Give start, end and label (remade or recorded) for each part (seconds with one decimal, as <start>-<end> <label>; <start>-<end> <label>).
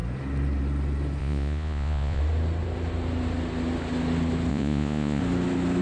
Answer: 0.0-1.2 recorded; 1.2-2.2 remade; 2.2-4.5 recorded; 4.5-5.2 remade; 5.2-5.8 recorded